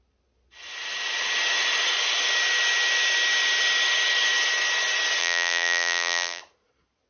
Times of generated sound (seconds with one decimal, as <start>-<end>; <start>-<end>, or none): 5.2-6.4